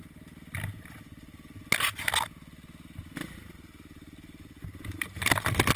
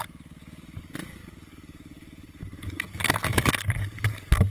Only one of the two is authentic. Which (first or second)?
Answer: first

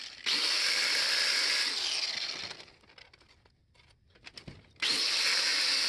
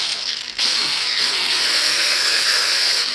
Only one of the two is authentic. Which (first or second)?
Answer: first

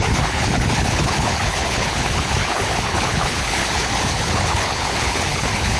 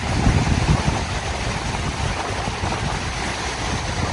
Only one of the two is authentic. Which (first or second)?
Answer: second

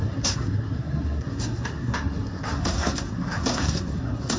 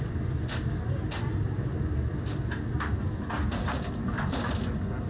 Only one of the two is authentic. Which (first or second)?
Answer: second